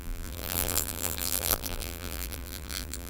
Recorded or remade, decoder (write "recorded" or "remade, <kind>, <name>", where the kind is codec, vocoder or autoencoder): remade, vocoder, BigVGAN v2